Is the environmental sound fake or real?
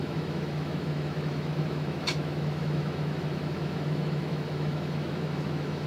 fake